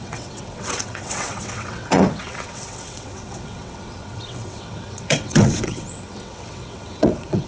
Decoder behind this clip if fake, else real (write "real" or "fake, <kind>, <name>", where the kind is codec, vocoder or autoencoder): fake, vocoder, WaveNeXt